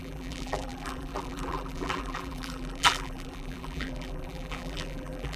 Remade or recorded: remade